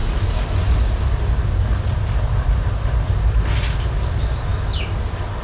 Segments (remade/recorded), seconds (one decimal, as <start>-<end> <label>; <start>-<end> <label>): 0.0-5.4 recorded